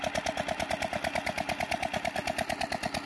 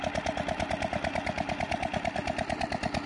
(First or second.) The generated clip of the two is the second